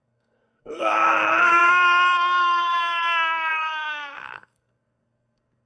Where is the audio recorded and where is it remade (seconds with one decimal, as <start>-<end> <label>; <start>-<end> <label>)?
0.0-5.7 remade